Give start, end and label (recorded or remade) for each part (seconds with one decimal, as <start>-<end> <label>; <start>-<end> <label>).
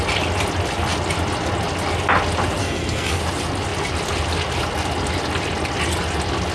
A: 0.0-2.6 recorded; 2.6-3.2 remade; 3.2-6.5 recorded